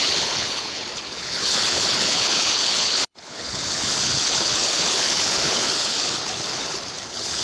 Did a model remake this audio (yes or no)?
yes